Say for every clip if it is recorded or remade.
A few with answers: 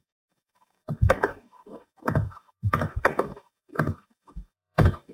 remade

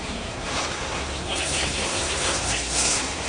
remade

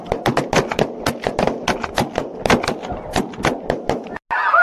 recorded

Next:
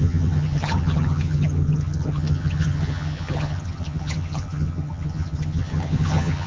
remade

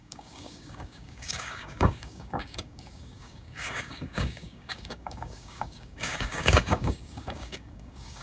remade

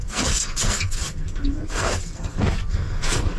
remade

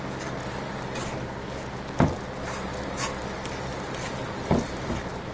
recorded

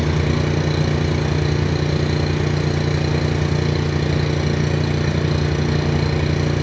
recorded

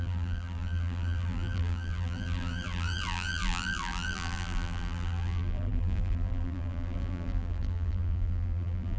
remade